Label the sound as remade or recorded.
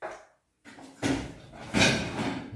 recorded